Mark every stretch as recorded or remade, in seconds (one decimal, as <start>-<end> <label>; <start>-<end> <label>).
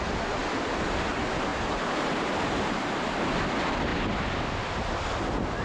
0.0-1.5 recorded; 1.5-3.1 remade; 3.1-5.6 recorded